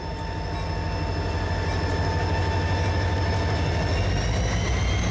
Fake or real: real